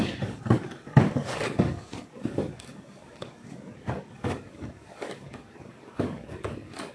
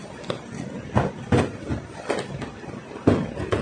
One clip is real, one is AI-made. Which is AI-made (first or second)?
first